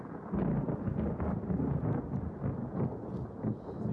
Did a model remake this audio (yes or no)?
no